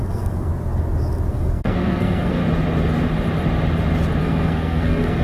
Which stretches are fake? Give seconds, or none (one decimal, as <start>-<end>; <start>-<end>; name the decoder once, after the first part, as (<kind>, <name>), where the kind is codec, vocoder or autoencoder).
0.0-0.5 (codec, SNAC); 1.3-2.4; 4.2-5.2